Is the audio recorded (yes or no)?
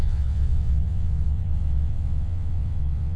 no